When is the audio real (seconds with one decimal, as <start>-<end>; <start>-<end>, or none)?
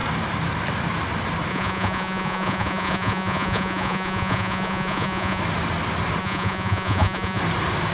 0.0-1.5; 5.4-6.2; 7.4-7.9